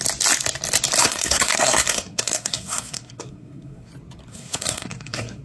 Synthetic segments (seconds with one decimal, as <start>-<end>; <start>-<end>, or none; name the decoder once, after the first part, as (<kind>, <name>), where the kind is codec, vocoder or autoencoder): 1.0-3.9 (codec, SNAC); 4.3-5.4